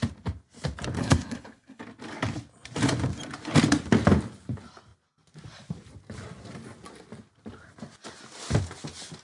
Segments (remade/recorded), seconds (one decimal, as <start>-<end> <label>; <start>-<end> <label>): 0.0-1.0 recorded; 1.0-1.8 remade; 1.8-9.2 recorded